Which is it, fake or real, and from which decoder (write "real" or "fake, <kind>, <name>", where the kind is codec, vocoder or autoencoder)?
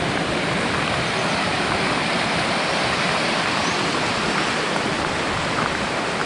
real